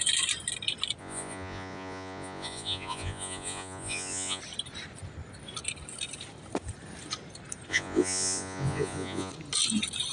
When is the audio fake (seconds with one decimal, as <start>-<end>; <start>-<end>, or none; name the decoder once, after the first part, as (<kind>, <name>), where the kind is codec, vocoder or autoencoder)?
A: 1.0-4.4 (vocoder, Vocos); 7.7-9.3